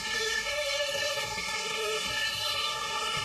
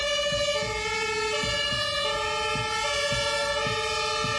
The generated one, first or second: first